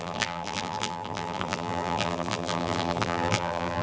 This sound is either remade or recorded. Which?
remade